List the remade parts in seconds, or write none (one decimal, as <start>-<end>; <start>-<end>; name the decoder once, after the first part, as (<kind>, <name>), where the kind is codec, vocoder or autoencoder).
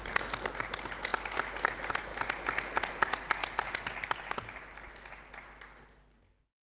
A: none